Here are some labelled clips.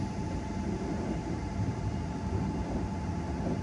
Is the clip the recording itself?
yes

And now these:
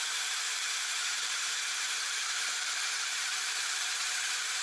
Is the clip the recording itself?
no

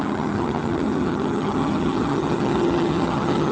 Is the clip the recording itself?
no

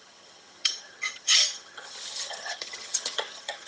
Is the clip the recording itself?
no